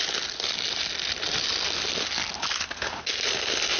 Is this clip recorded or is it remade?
recorded